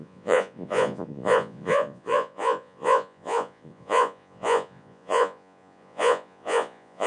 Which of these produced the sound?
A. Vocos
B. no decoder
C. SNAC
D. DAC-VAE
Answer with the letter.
A